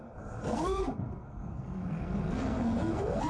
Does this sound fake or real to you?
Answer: fake